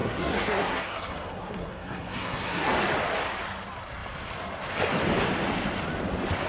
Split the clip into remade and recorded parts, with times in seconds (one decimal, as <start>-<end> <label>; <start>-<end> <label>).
0.0-2.7 remade; 2.7-6.5 recorded